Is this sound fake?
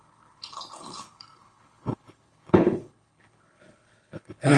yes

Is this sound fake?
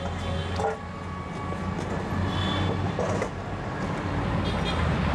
no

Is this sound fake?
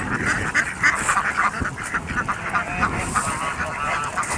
no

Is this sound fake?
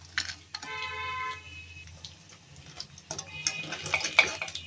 no